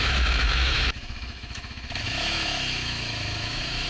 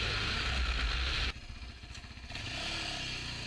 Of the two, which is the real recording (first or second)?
second